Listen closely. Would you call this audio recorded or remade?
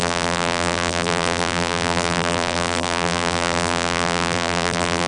remade